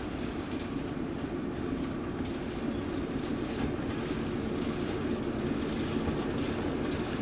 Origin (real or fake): real